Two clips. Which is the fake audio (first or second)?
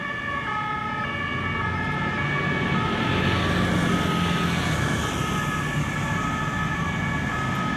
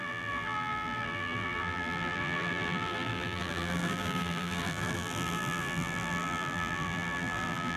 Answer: second